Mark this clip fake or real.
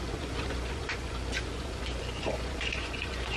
fake